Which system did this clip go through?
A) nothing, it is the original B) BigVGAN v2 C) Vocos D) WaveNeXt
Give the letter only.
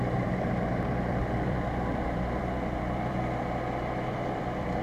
B